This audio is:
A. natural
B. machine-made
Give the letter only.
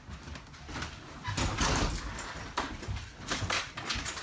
A